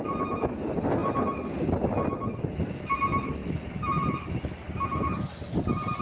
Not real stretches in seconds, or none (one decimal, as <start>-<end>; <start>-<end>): none